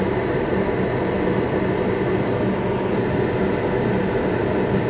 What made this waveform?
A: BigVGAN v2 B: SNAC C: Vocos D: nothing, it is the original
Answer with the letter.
D